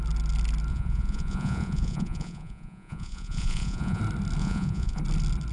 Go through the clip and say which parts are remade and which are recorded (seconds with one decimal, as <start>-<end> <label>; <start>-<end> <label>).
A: 0.0-0.7 recorded; 0.7-4.0 remade; 4.0-4.4 recorded; 4.4-5.0 remade; 5.0-5.5 recorded